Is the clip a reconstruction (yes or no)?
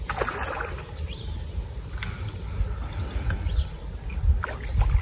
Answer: no